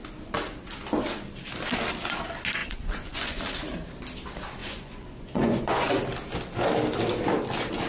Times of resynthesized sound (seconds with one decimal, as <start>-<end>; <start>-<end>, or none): 2.6-3.4; 4.6-5.9